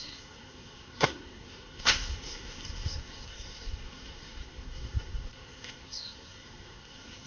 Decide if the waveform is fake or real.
fake